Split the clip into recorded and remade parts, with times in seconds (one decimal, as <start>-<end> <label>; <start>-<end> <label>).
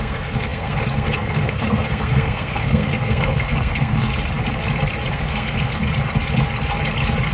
0.0-4.1 remade; 4.1-5.1 recorded; 5.1-5.8 remade; 5.8-7.3 recorded